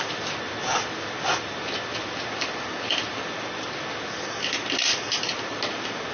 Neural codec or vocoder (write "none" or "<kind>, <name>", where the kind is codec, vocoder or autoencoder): none